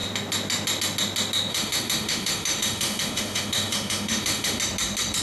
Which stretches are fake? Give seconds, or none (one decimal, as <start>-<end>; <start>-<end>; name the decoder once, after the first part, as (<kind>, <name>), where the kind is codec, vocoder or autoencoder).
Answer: 1.5-4.6 (autoencoder, DAC-VAE)